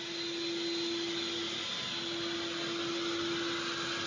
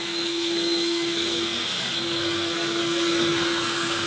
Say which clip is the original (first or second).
first